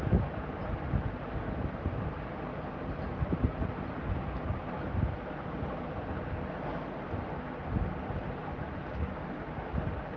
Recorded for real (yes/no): yes